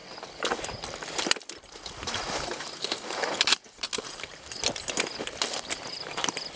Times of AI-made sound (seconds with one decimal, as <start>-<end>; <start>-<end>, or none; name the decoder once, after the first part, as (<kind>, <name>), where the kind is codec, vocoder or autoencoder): none